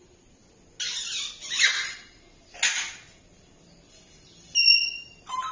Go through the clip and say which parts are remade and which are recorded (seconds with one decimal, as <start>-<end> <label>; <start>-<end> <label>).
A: 0.0-5.5 recorded